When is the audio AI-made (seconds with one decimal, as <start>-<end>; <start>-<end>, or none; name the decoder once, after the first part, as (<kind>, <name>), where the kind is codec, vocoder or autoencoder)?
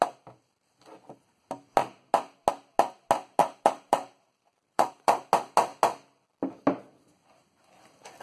3.4-5.3 (vocoder, BigVGAN v2)